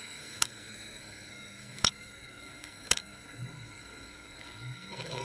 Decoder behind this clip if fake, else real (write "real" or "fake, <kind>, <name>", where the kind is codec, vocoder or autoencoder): fake, codec, SNAC